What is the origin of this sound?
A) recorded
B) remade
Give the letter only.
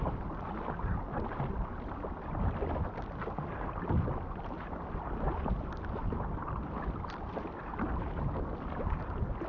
A